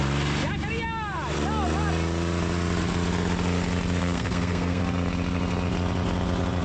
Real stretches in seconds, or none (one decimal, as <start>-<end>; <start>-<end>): 0.0-4.0; 4.8-6.6